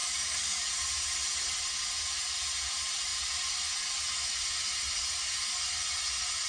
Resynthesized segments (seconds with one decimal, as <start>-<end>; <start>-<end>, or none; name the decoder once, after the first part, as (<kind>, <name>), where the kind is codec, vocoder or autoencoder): 0.0-0.7 (codec, DAC)